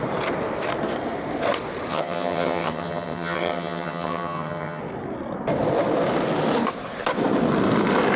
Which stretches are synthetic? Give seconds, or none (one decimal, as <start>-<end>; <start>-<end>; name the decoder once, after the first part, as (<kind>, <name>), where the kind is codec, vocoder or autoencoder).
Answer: 1.9-4.8 (vocoder, HiFi-GAN)